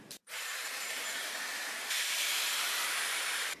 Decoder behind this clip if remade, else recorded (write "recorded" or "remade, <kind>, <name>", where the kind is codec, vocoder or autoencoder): remade, vocoder, BigVGAN v2